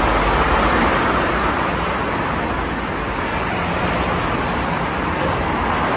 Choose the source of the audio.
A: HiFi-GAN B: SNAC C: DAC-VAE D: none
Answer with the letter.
D